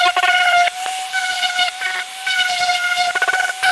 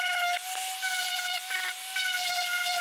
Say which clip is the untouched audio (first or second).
second